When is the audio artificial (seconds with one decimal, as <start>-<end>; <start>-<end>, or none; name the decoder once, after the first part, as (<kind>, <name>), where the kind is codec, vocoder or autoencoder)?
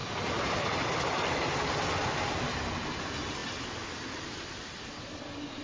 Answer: none